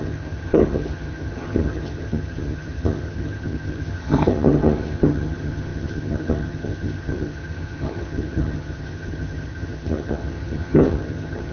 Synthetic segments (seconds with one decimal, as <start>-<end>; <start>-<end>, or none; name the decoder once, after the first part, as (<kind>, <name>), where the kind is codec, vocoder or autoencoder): 0.0-11.5 (vocoder, HiFi-GAN)